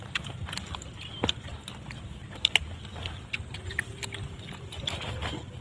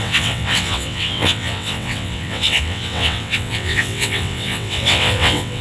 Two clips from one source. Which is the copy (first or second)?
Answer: second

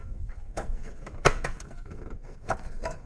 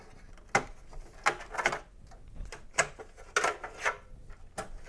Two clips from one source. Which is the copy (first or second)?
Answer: first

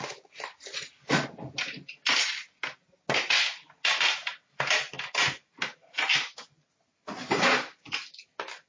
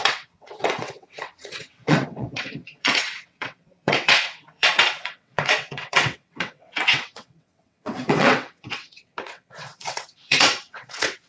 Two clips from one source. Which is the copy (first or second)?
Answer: second